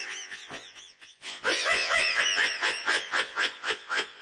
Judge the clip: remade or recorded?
remade